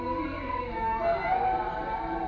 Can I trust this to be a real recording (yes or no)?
yes